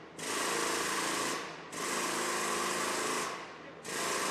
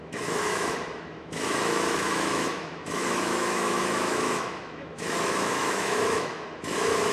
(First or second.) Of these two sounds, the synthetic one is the second